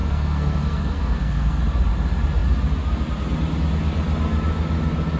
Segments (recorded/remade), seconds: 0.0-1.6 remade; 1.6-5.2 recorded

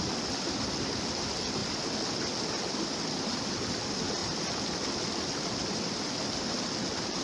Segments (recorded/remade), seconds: 0.0-7.2 recorded